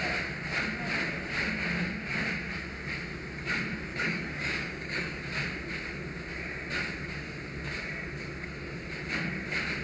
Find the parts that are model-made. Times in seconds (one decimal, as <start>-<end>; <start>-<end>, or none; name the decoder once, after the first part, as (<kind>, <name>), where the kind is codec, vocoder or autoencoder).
3.9-5.2 (codec, DAC)